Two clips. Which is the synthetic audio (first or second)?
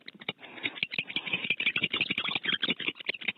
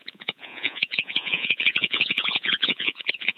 second